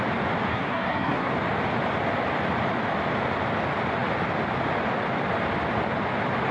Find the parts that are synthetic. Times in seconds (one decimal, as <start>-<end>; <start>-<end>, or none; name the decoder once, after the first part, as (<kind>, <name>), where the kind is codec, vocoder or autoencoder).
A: 0.5-1.3 (codec, SNAC)